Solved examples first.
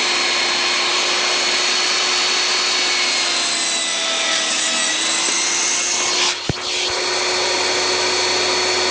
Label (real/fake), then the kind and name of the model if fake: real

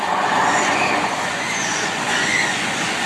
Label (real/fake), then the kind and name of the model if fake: fake, vocoder, Vocos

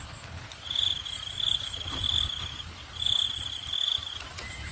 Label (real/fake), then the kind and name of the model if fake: real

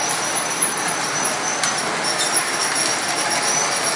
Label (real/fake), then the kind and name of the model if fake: real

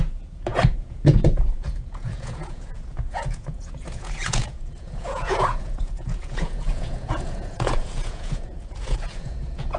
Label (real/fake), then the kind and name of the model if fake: fake, vocoder, Vocos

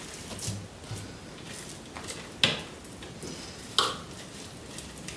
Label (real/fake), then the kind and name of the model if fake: real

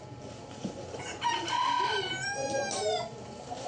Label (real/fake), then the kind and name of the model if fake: fake, vocoder, BigVGAN v2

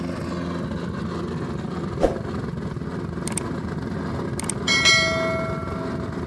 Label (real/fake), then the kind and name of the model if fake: real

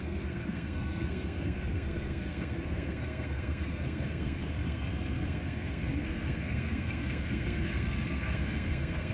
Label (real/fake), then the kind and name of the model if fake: fake, codec, SNAC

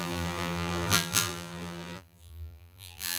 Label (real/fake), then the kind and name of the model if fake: fake, vocoder, BigVGAN v2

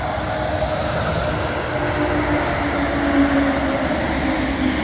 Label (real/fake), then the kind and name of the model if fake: real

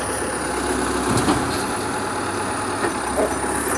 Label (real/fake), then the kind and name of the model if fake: real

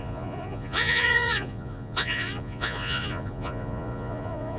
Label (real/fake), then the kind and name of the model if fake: fake, vocoder, Vocos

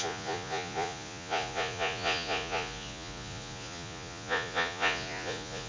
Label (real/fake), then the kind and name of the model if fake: fake, vocoder, Vocos